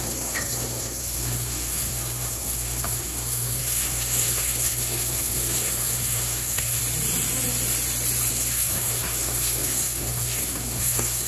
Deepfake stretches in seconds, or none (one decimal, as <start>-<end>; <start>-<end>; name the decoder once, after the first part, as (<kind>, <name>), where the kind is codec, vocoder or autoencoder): 0.0-6.8 (codec, SNAC); 8.3-11.3

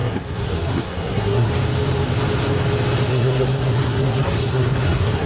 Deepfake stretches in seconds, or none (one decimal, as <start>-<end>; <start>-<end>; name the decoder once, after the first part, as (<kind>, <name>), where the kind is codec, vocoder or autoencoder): 0.0-1.5 (codec, SNAC); 3.1-5.3

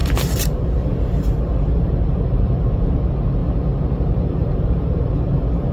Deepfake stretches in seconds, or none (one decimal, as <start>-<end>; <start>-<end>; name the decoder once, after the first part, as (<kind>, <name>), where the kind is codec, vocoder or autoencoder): 0.0-3.0 (vocoder, BigVGAN v2); 3.4-5.2

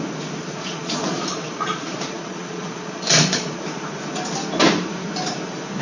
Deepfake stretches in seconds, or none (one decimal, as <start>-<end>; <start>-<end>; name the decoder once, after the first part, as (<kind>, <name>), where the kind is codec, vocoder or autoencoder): 0.4-3.6 (vocoder, Vocos)